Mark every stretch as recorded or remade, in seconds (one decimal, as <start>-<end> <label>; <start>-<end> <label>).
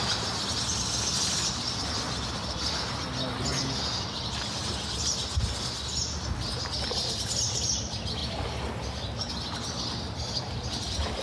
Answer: 0.0-11.2 recorded